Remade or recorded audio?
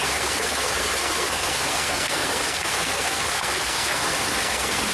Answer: remade